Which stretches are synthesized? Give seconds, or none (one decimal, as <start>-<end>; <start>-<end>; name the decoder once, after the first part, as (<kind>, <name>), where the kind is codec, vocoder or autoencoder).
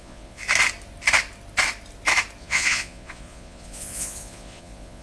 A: 0.0-0.4 (vocoder, Vocos); 2.4-5.0